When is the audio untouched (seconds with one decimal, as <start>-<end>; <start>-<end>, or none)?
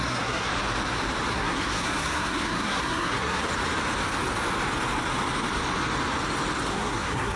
0.5-1.3; 3.5-6.7